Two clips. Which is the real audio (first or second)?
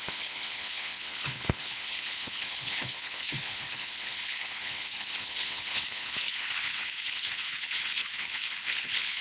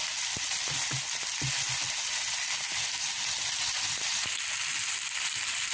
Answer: second